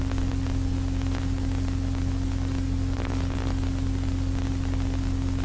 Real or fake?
real